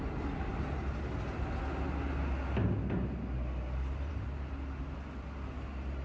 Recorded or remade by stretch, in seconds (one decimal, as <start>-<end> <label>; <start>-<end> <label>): 0.0-6.0 recorded